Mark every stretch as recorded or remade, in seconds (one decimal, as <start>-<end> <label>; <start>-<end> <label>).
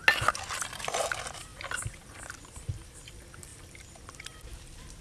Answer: 0.0-0.5 recorded; 0.5-3.5 remade; 3.5-5.0 recorded